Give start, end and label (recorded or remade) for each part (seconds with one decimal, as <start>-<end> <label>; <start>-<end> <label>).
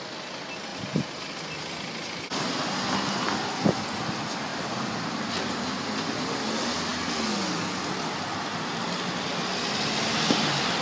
0.0-0.7 recorded; 0.7-1.2 remade; 1.2-4.5 recorded; 4.5-5.3 remade; 5.3-10.8 recorded